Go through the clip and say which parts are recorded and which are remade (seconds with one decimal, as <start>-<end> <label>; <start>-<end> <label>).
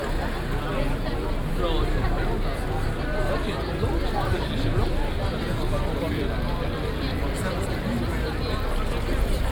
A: 0.0-9.5 recorded